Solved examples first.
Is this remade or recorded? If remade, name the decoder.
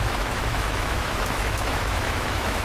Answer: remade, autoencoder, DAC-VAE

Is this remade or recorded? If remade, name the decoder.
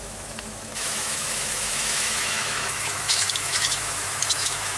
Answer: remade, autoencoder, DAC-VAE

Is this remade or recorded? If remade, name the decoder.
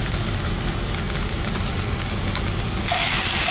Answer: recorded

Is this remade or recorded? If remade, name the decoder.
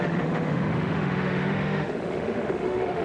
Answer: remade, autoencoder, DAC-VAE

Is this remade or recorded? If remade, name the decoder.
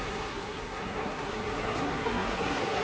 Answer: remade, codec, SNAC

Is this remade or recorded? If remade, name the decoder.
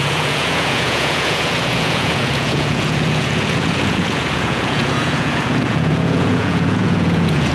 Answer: remade, vocoder, Vocos